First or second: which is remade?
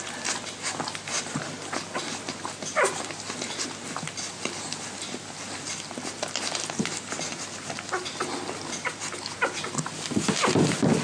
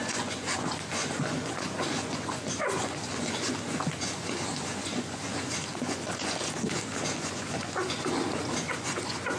second